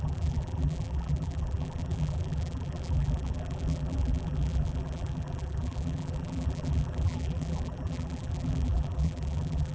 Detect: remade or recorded remade